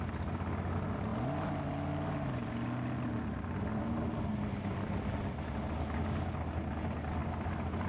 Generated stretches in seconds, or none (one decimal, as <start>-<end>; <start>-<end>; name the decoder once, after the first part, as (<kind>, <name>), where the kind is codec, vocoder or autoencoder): none